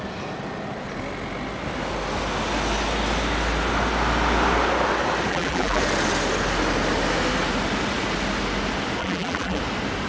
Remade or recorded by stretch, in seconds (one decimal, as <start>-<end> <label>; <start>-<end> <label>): 0.0-5.3 recorded; 5.3-5.8 remade; 5.8-9.0 recorded; 9.0-9.6 remade; 9.6-10.1 recorded